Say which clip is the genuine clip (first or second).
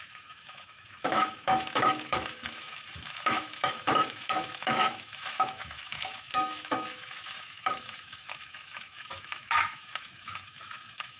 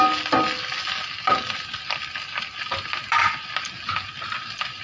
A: second